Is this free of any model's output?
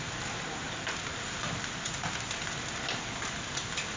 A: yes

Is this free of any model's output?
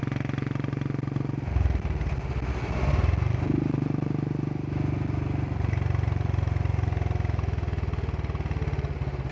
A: yes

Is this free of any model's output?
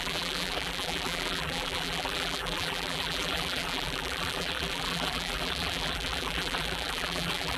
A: no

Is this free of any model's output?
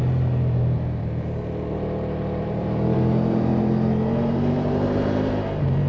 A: no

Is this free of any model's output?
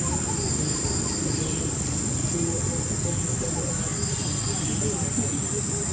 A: yes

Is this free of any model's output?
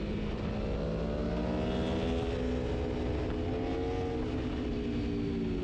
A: yes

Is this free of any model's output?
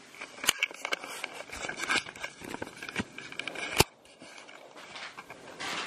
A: yes